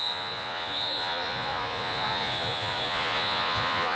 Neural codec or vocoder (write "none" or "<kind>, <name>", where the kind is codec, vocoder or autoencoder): vocoder, Vocos